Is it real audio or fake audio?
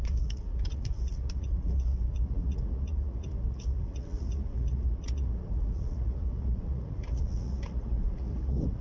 fake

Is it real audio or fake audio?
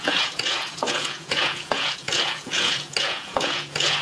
fake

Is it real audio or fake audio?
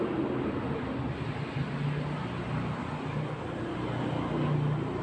real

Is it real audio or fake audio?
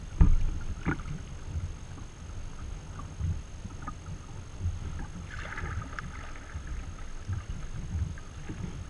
real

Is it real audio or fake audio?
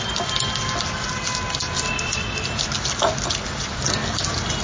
real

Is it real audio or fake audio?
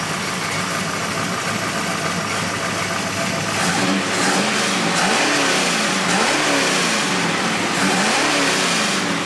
real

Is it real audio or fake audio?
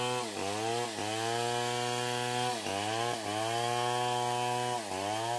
real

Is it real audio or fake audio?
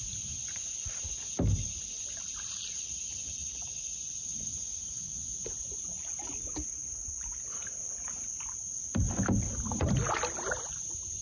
real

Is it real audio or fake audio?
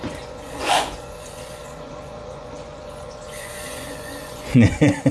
fake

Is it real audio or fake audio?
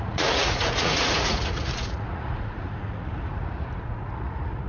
fake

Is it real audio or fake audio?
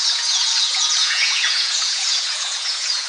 fake